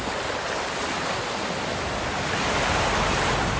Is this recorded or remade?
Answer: recorded